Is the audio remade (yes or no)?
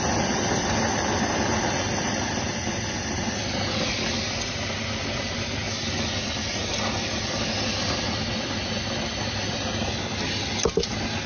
no